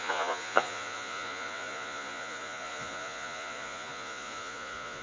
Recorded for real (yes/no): no